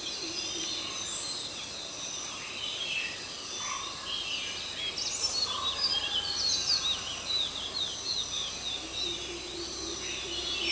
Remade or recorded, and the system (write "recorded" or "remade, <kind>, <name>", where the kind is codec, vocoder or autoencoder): recorded